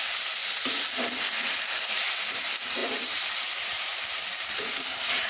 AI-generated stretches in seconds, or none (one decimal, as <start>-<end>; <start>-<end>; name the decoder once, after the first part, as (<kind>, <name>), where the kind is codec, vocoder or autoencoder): 0.0-0.4 (vocoder, BigVGAN v2); 1.9-5.3